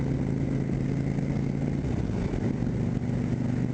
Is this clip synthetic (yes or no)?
no